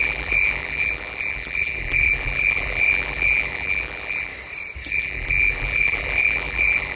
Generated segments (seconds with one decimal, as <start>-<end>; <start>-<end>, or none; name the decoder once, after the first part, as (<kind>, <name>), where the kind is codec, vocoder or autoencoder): 0.0-4.3 (vocoder, BigVGAN v2); 4.9-7.0